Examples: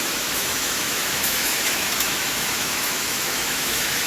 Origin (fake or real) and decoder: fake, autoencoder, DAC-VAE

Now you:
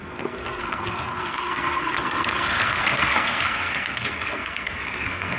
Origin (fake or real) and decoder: fake, codec, SNAC